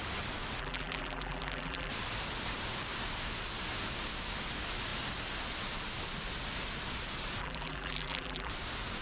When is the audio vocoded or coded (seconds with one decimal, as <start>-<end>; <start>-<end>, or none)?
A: 0.6-1.9; 7.4-8.5